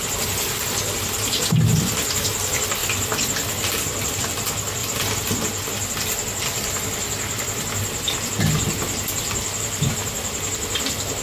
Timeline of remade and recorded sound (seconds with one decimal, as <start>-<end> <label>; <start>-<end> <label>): 0.0-11.2 recorded